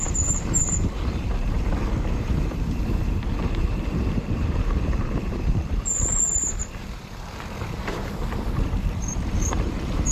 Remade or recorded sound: remade